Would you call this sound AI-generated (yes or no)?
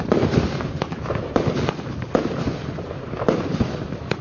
no